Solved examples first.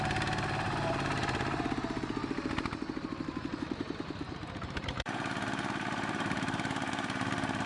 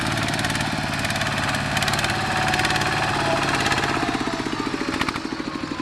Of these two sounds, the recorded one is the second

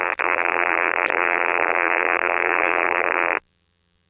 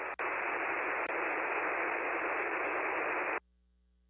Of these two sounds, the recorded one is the second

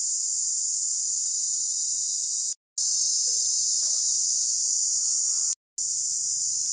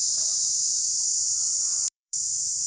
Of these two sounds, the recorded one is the first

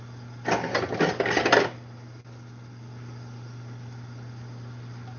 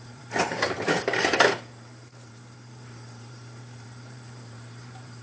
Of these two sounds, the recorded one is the first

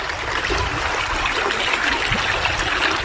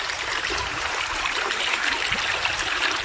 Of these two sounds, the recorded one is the first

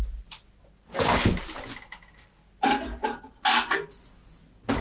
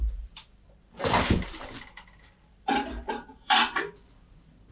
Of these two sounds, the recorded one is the first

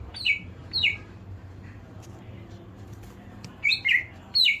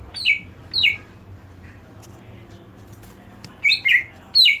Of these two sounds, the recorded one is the second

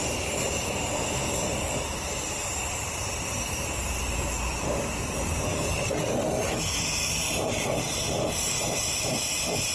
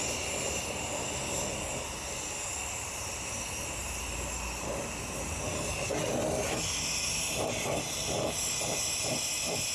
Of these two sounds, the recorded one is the second